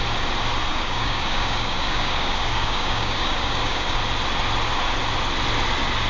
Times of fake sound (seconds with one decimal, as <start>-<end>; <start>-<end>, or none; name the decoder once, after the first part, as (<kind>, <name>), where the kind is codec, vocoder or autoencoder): 0.7-4.0 (codec, DAC)